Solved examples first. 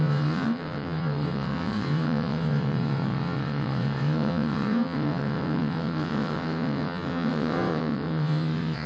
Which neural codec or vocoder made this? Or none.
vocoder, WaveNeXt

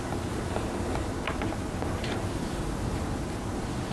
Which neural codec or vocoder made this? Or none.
none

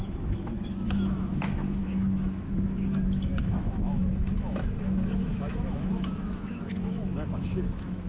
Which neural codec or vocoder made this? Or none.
autoencoder, DAC-VAE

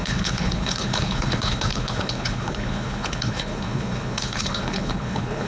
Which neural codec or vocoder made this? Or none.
codec, HILCodec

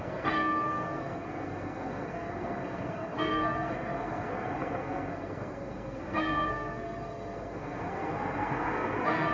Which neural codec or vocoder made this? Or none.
codec, SNAC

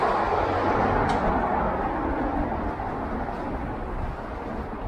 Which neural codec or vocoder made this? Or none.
none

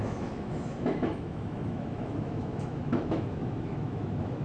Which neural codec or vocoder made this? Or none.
autoencoder, DAC-VAE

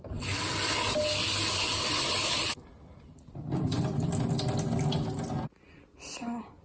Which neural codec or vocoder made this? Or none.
none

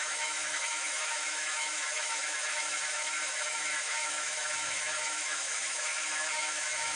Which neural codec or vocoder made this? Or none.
autoencoder, DAC-VAE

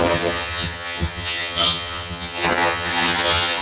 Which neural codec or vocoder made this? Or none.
vocoder, HiFi-GAN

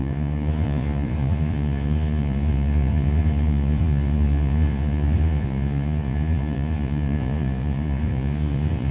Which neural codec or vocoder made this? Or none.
vocoder, Vocos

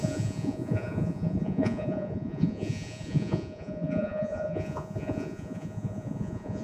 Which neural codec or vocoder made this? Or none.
vocoder, Vocos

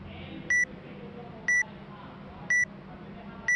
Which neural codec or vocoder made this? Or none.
none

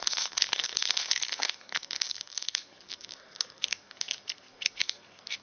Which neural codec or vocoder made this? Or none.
codec, SNAC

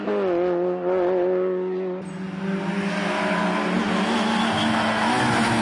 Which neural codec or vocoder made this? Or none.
none